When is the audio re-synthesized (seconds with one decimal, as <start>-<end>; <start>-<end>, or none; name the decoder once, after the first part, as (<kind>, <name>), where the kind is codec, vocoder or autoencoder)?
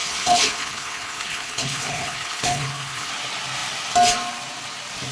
0.0-3.1 (codec, HILCodec)